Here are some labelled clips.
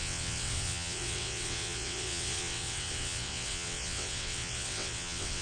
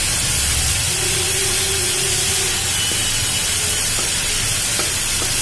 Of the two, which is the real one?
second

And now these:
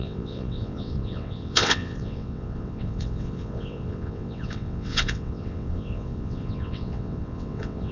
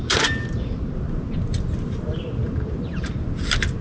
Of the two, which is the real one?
second